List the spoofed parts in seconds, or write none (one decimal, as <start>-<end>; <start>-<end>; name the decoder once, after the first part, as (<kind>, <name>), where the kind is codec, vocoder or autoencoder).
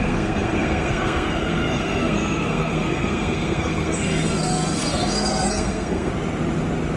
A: 0.0-6.1 (codec, SNAC)